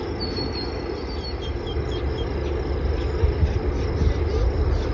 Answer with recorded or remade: recorded